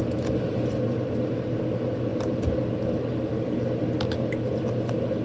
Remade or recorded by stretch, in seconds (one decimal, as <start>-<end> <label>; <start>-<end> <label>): 0.0-5.2 recorded